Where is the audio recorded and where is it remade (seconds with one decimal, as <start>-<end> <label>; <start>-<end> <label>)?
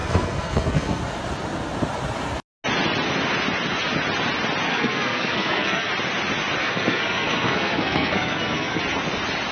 0.0-1.0 remade; 1.0-4.7 recorded; 4.7-5.9 remade; 5.9-6.6 recorded; 6.6-8.8 remade; 8.8-9.5 recorded